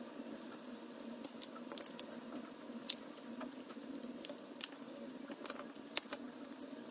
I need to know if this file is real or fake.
real